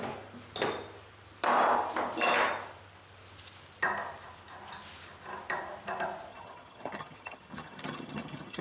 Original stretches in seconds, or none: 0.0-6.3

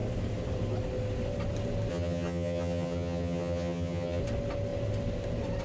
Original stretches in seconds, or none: 0.0-1.9; 4.2-5.6

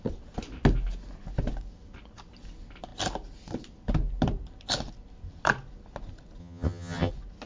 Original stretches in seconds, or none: 0.0-6.4; 7.1-7.5

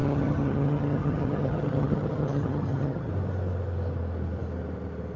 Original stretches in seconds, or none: 3.1-5.2

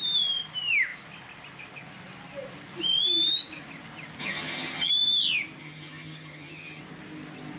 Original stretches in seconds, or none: 0.0-4.2; 4.9-5.6; 6.8-7.6

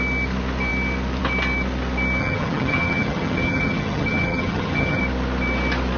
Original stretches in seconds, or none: 0.0-2.2; 5.0-6.0

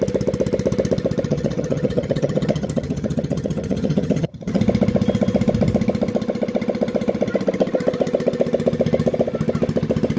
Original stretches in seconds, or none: 0.0-1.3; 4.6-10.2